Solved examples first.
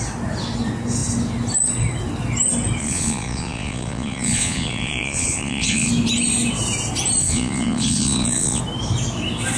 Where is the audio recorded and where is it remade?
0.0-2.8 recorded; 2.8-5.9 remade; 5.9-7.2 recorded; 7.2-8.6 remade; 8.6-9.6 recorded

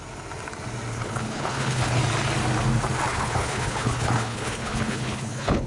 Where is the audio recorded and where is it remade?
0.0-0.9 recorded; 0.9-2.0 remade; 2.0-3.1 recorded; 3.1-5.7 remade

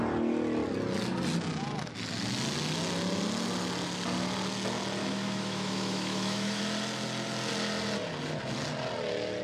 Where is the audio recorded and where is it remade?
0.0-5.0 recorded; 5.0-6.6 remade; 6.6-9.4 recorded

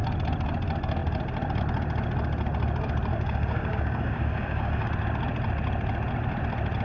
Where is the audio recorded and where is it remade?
0.0-3.1 recorded; 3.1-4.9 remade; 4.9-6.8 recorded